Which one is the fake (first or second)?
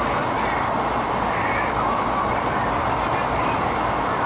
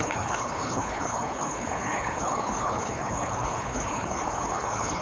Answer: second